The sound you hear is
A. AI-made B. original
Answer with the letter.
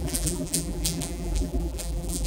A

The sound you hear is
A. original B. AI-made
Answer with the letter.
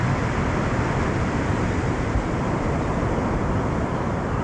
A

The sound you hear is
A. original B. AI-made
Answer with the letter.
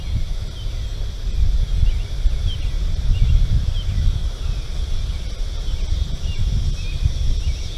A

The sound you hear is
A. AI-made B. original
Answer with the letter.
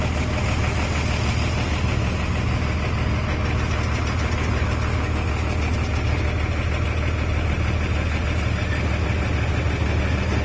B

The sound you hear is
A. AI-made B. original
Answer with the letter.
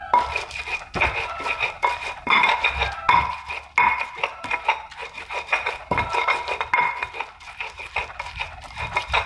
B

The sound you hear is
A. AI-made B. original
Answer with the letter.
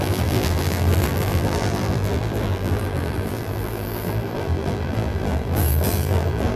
A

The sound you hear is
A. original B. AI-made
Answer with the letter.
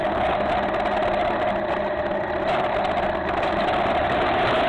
A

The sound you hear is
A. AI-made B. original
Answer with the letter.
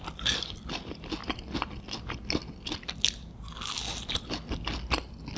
B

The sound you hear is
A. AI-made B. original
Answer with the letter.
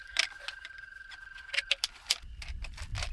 B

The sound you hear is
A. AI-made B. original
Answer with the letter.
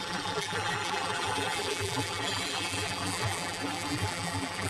A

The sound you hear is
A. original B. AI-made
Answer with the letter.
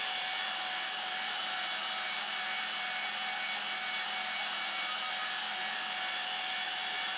B